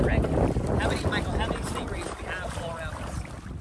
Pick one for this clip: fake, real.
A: real